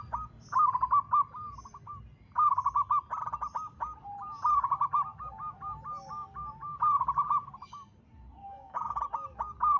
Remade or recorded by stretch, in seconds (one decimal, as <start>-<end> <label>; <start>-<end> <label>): 0.0-8.4 recorded; 8.4-9.0 remade; 9.0-9.8 recorded